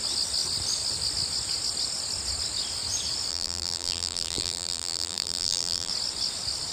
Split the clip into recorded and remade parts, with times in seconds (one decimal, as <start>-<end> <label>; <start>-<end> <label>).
0.0-3.3 recorded; 3.3-5.9 remade; 5.9-6.7 recorded